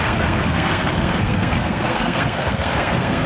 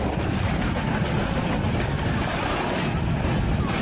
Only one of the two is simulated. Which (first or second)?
first